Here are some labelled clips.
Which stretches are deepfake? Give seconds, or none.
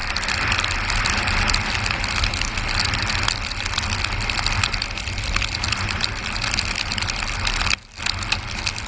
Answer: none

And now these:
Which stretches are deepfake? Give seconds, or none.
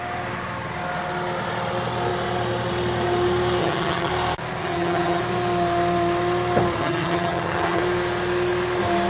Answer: 3.6-4.1 (vocoder, HiFi-GAN); 4.6-5.2; 6.8-7.8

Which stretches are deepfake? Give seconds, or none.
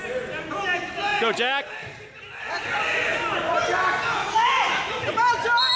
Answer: none